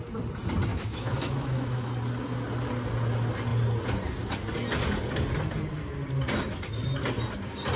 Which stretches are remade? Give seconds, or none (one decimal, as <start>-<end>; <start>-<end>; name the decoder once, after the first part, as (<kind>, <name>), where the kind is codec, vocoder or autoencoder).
0.7-1.9 (autoencoder, DAC-VAE)

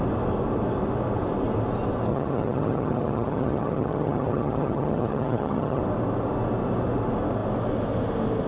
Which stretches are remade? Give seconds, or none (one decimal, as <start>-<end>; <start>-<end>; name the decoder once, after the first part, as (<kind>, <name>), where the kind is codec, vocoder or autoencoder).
2.1-5.8 (vocoder, HiFi-GAN)